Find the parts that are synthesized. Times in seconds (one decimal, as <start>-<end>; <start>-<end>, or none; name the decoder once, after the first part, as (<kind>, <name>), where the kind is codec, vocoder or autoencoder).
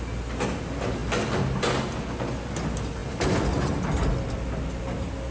none